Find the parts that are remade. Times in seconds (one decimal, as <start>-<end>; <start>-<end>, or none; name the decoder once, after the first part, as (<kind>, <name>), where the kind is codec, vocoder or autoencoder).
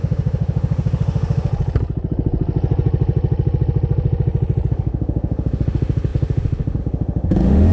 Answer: 0.0-1.5 (autoencoder, DAC-VAE); 4.7-7.7